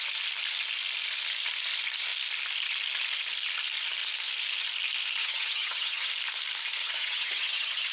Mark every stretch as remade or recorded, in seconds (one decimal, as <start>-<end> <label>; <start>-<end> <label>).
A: 0.0-5.2 recorded; 5.2-6.1 remade; 6.1-6.8 recorded; 6.8-7.9 remade